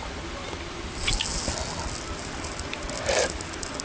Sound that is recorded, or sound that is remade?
recorded